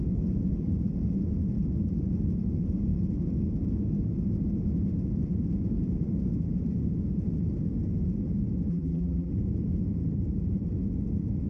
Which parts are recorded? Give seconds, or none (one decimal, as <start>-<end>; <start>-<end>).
0.0-8.7; 9.3-11.5

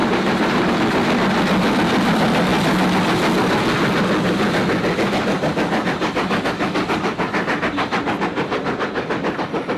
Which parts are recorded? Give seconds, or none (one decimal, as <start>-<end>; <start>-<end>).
0.7-9.8

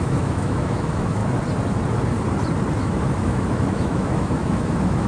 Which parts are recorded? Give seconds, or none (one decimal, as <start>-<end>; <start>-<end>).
1.2-2.8

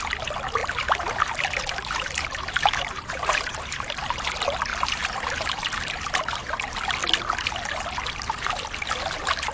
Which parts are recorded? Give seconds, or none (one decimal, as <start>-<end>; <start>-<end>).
0.0-0.6; 4.3-4.7; 6.1-9.5

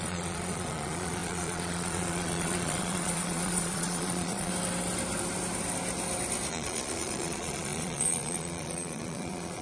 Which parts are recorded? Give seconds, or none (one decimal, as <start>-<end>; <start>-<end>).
4.5-6.5

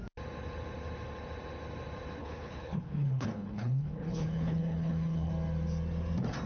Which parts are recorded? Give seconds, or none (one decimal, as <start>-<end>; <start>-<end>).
0.0-2.2; 5.3-6.5

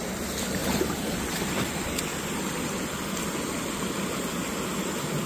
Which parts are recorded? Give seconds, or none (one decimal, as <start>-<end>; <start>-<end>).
0.0-5.3